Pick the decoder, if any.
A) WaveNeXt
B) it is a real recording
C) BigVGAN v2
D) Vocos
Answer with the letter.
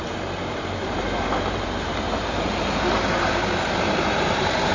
C